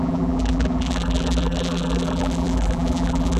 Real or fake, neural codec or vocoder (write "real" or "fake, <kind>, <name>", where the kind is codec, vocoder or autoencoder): fake, vocoder, BigVGAN v2